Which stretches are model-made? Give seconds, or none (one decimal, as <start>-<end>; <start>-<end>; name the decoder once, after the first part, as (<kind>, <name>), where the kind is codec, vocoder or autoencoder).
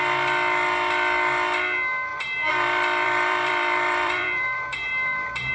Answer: 2.1-5.5 (vocoder, BigVGAN v2)